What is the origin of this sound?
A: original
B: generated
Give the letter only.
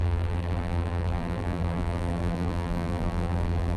B